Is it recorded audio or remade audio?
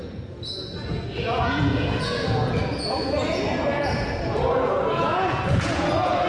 remade